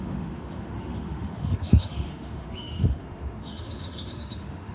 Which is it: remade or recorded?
remade